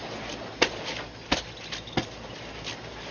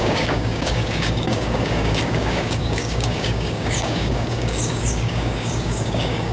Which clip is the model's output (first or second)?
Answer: second